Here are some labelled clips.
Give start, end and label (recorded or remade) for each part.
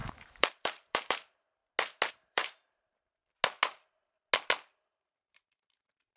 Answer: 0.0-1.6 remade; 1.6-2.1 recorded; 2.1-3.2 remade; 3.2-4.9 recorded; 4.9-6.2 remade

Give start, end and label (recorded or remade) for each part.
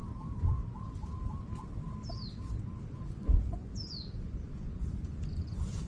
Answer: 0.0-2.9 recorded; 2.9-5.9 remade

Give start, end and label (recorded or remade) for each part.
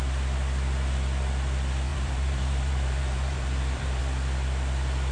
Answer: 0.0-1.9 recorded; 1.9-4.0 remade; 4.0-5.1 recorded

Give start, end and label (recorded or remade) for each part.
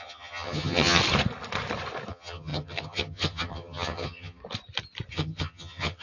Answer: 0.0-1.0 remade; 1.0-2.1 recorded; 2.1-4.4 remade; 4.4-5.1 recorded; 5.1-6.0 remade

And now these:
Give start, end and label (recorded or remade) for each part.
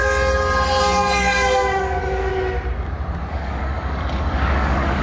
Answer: 0.0-0.8 recorded; 0.8-2.3 remade; 2.3-3.3 recorded; 3.3-5.0 remade